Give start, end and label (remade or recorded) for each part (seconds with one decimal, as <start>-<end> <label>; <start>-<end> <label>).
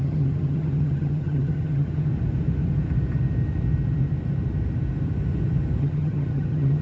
0.0-2.1 remade; 2.1-5.8 recorded; 5.8-6.8 remade